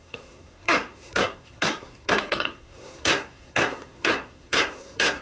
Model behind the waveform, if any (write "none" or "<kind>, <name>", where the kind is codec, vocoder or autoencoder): codec, SNAC